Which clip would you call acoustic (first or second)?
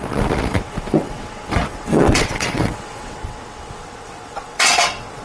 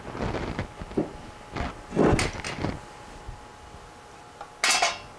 second